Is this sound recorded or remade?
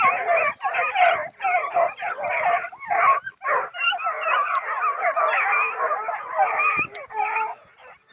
recorded